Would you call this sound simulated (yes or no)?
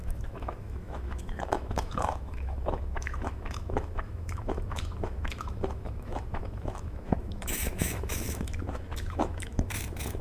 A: yes